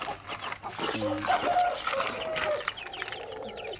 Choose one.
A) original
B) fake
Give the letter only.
A